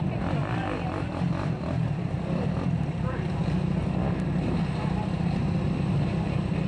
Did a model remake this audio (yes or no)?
no